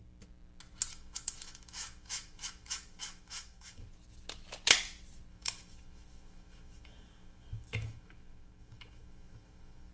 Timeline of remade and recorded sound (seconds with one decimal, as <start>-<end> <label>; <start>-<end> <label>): 0.0-0.9 recorded; 0.9-3.9 remade; 3.9-5.3 recorded; 5.3-9.9 remade